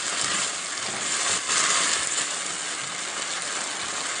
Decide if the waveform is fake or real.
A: real